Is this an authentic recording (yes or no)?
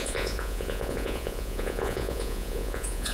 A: no